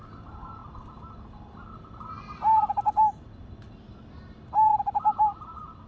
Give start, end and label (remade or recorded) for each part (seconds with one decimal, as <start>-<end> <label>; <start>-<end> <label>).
0.0-5.9 recorded